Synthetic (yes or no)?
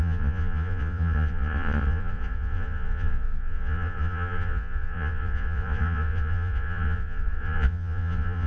yes